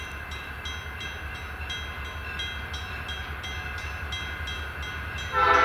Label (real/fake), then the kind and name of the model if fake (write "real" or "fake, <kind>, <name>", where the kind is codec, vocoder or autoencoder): real